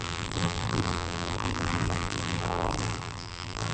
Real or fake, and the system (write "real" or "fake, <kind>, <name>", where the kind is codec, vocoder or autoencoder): fake, vocoder, BigVGAN v2